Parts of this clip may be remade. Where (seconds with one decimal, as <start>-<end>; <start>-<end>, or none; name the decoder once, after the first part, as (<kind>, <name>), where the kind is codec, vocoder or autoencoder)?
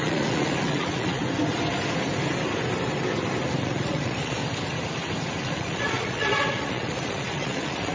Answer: 0.0-1.2 (vocoder, Vocos); 3.6-4.4; 5.4-7.9